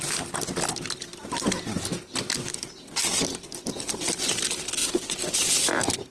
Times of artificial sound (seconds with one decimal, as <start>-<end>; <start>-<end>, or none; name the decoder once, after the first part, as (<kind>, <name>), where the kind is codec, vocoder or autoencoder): 4.8-5.5 (vocoder, Vocos)